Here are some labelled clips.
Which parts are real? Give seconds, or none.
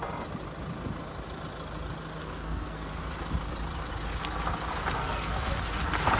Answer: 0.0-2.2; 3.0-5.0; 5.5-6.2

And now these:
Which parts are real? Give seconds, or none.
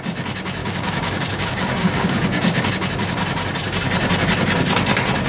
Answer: 0.0-0.6; 2.7-5.3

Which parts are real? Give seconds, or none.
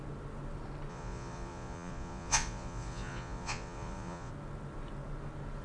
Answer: 0.0-0.9; 4.3-5.6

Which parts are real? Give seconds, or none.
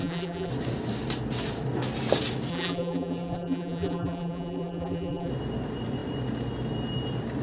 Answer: 0.5-2.5; 5.3-7.4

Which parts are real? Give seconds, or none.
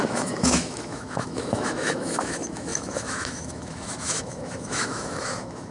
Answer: none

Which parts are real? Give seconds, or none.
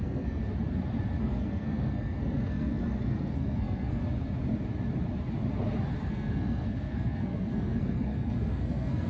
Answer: 0.4-1.2; 4.0-6.0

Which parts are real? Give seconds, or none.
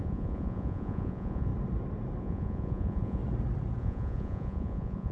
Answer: 1.5-2.2; 3.2-3.8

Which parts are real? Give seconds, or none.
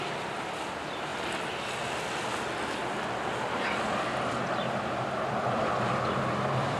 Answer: 1.1-5.2